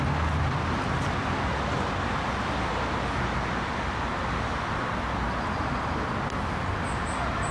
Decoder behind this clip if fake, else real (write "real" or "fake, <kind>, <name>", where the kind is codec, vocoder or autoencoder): real